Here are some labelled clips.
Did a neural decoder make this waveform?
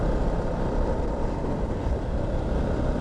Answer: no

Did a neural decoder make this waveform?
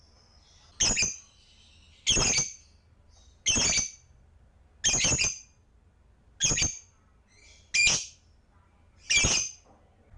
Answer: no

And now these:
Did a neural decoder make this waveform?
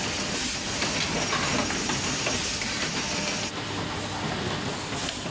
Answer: no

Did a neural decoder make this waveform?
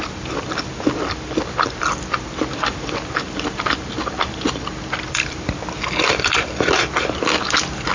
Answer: yes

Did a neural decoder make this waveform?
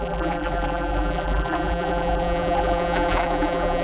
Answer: yes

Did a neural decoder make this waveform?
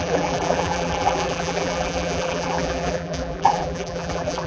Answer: yes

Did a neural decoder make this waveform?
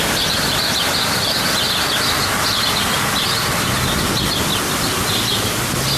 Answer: no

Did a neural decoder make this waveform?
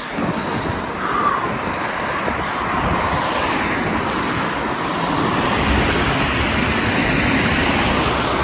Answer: no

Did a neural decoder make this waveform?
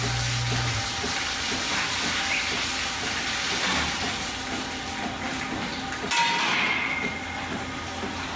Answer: no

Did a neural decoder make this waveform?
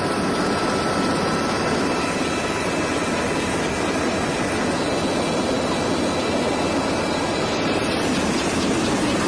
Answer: no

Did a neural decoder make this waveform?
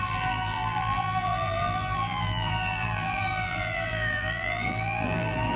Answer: yes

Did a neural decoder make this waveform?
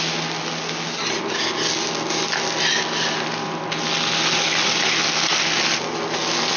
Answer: no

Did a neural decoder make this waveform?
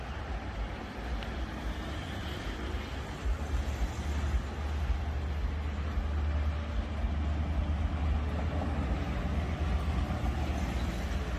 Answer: no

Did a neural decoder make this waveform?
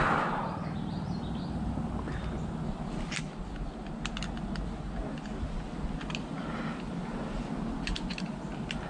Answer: no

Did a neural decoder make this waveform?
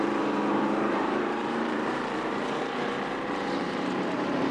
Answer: yes